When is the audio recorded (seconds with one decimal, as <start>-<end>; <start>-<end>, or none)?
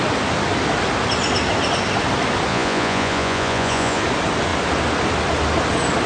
0.0-2.5; 4.0-6.1